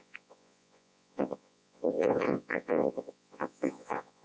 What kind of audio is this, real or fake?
fake